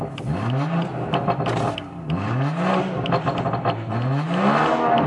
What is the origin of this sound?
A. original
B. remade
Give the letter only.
A